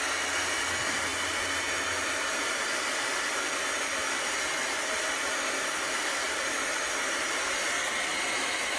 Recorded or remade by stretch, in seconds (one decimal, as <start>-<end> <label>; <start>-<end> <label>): 0.0-8.8 recorded